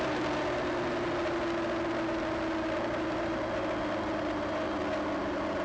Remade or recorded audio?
recorded